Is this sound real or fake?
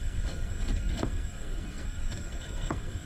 fake